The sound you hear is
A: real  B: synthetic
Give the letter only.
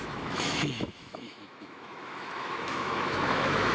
B